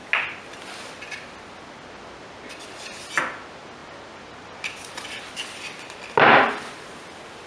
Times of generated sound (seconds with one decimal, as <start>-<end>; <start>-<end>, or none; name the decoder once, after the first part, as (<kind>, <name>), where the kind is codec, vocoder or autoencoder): none